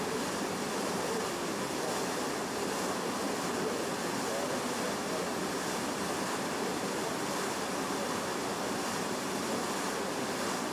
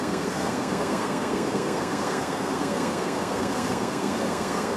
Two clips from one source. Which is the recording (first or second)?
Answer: first